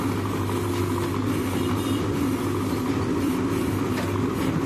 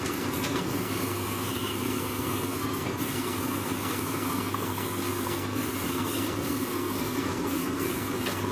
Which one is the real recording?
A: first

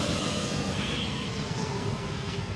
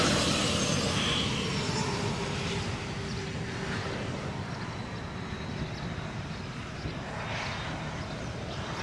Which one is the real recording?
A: second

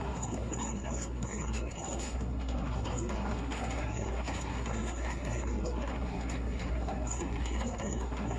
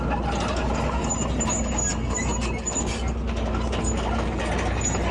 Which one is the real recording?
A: second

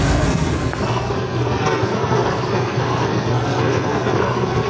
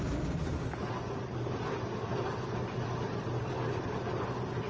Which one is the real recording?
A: second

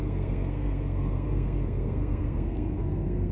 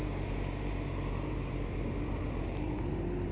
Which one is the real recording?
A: second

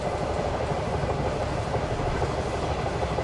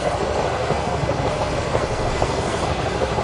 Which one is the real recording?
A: first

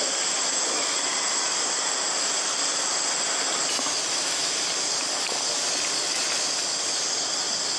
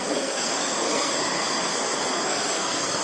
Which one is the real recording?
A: first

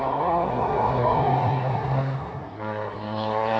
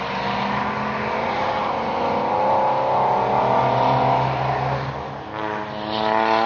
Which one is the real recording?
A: second